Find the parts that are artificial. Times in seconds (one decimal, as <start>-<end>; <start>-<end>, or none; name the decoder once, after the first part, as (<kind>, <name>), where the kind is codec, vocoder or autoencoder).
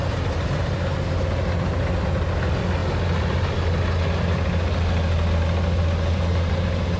none